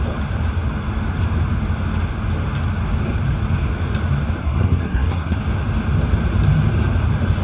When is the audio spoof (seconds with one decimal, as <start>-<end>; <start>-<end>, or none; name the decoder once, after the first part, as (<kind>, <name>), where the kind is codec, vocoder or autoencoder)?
4.4-5.4 (codec, SNAC)